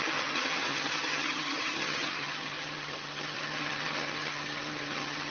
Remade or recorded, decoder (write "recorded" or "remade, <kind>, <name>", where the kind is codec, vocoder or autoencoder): remade, vocoder, HiFi-GAN